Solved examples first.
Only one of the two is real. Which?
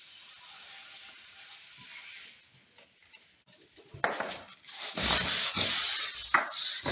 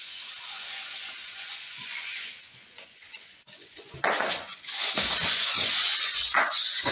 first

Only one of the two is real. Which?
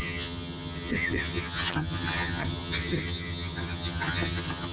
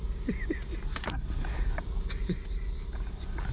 second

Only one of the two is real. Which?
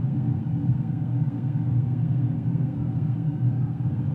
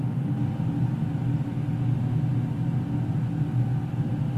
second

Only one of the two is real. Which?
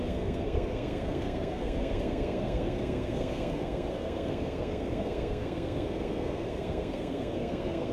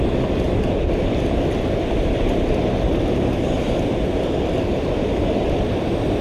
second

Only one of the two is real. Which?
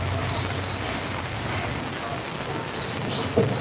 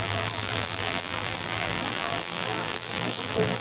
first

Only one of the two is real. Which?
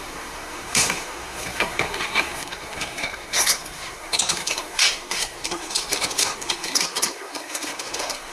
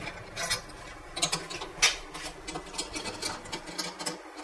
second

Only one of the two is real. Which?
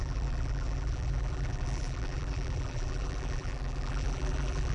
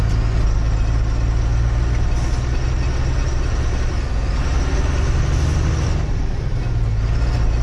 second